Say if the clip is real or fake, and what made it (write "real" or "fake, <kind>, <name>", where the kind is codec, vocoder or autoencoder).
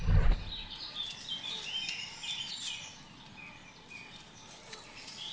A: real